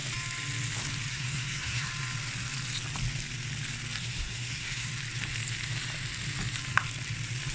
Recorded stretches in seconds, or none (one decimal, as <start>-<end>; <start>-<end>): 0.0-1.1; 1.9-4.0; 4.9-7.5